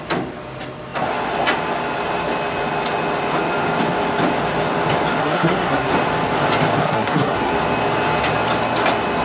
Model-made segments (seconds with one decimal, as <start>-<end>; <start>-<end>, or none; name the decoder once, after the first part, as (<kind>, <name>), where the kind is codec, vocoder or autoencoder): 5.2-5.9 (codec, SNAC); 6.8-7.5